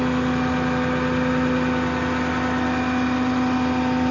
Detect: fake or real real